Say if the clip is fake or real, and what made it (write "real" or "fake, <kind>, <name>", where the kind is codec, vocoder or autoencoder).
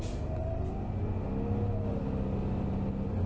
real